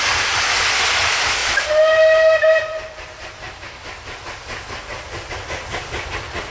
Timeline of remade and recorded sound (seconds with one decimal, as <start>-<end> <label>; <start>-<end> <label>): 0.0-6.5 recorded